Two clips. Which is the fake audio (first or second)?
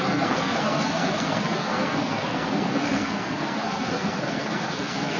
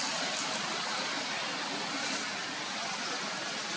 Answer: first